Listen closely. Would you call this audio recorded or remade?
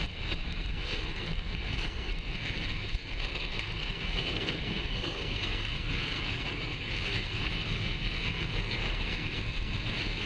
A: remade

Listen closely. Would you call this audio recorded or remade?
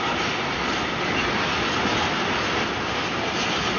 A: recorded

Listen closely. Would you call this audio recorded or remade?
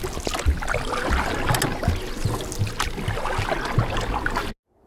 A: recorded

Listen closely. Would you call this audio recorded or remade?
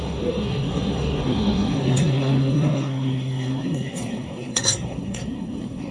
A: remade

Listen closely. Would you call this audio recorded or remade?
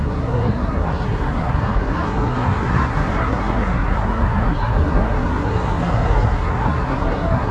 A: remade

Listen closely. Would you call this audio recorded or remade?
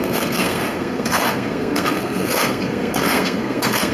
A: remade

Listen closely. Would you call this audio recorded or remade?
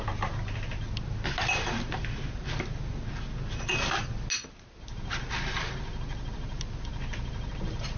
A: recorded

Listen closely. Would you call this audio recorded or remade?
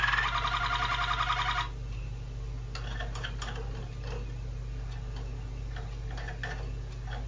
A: recorded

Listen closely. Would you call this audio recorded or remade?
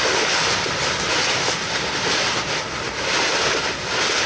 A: recorded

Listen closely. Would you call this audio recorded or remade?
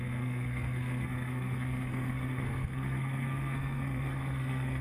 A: remade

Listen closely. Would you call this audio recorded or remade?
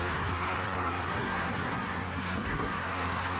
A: remade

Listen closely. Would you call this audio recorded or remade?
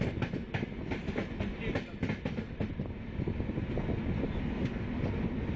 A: recorded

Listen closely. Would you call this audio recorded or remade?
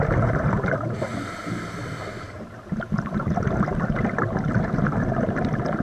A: recorded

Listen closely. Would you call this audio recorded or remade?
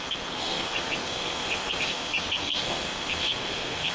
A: remade